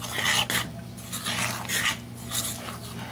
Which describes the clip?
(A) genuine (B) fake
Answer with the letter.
A